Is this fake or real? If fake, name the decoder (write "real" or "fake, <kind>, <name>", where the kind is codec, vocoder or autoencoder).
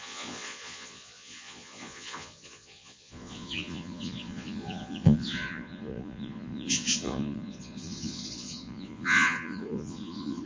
fake, vocoder, Vocos